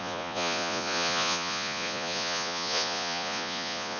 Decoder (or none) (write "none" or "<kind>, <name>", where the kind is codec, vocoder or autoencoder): vocoder, Vocos